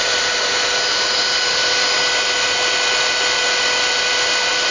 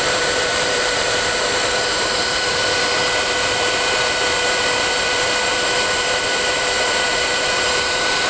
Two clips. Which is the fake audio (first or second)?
second